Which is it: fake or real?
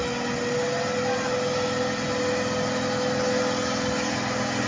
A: real